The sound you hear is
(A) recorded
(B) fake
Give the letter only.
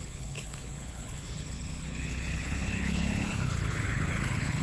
B